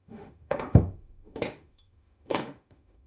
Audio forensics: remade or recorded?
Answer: remade